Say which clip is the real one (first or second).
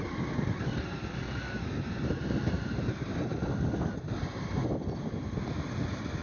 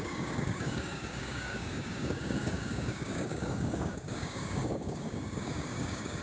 first